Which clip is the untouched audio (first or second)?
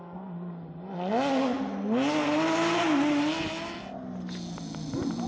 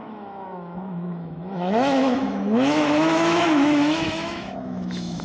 first